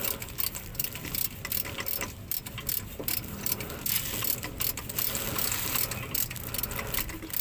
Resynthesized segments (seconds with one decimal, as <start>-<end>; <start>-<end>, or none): none